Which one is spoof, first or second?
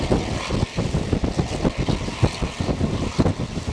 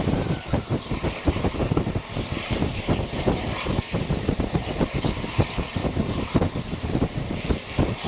second